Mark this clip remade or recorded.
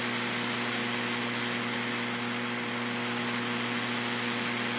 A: recorded